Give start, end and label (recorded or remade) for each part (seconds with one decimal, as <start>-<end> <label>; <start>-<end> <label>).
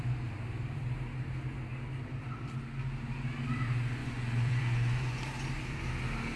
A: 0.0-4.0 recorded; 4.0-5.2 remade; 5.2-6.4 recorded